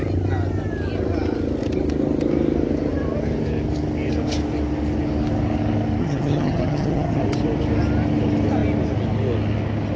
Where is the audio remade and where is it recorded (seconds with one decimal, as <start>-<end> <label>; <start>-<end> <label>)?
0.0-6.0 recorded; 6.0-7.2 remade; 7.2-10.0 recorded